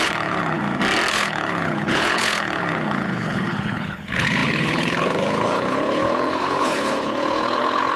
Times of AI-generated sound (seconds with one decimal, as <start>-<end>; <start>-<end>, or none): 0.0-0.6; 1.1-8.0